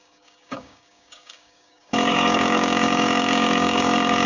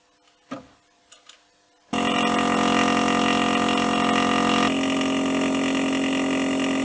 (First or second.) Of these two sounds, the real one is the second